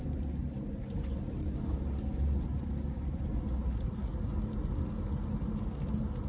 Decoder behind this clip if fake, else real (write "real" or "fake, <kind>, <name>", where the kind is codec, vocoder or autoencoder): real